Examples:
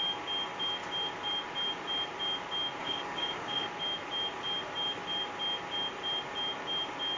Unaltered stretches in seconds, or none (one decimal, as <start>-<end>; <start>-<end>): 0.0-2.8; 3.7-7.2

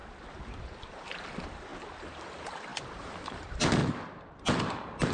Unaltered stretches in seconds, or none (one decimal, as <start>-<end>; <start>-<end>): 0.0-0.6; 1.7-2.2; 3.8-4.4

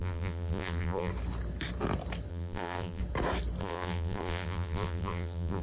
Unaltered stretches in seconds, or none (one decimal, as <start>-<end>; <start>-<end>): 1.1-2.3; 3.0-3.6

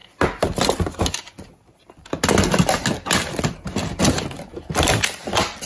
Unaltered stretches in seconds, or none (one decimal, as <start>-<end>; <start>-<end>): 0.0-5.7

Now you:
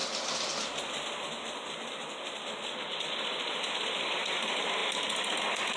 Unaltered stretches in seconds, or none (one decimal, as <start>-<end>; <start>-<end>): 0.0-5.8

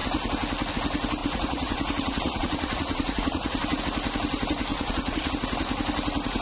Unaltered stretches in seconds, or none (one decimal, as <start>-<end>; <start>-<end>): 0.0-1.2; 3.8-4.7; 5.3-6.4

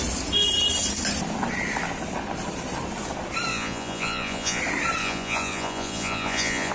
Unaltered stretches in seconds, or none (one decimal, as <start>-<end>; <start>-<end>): 0.0-3.5; 4.6-5.0

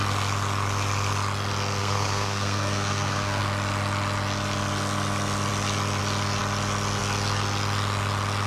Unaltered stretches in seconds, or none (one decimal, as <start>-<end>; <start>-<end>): 0.0-1.8; 3.4-8.5